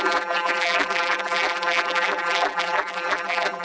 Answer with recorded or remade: remade